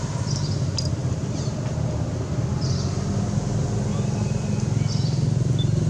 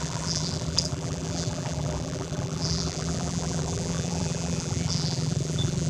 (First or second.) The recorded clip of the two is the first